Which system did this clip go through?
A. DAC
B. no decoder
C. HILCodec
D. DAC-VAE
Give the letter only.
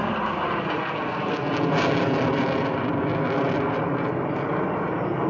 B